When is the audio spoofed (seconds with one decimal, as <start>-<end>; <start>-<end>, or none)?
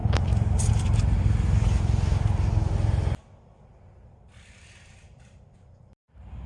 none